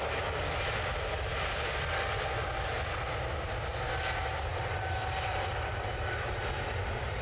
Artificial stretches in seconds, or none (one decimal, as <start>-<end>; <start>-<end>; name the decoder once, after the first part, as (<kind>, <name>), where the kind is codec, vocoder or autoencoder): 4.5-6.4 (vocoder, BigVGAN v2)